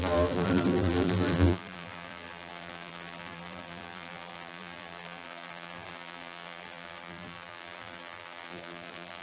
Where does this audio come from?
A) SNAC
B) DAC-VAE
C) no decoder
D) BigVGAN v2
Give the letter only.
D